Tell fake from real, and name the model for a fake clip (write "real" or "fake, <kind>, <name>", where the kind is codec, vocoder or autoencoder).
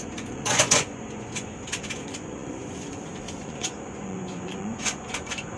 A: fake, vocoder, Vocos